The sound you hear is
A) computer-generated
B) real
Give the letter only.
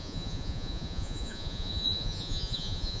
A